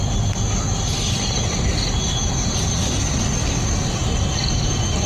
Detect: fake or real real